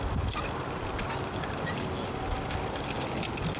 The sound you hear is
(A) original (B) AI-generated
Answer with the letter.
A